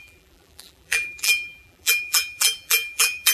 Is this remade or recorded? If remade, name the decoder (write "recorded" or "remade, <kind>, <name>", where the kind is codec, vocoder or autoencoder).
remade, vocoder, BigVGAN v2